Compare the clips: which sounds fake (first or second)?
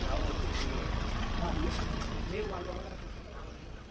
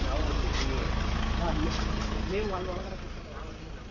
first